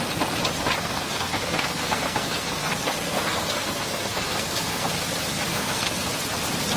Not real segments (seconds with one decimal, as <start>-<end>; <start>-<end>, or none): 0.8-4.9; 5.5-6.1